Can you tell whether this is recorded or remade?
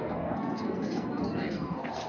remade